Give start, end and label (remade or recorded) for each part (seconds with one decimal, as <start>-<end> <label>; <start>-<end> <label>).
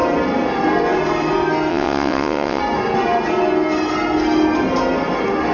0.0-1.7 recorded; 1.7-2.6 remade; 2.6-5.5 recorded